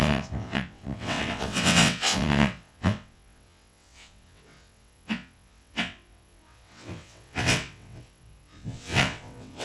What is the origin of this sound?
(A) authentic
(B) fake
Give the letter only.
B